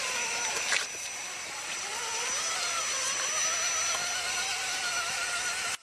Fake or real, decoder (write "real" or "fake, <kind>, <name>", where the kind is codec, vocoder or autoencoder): real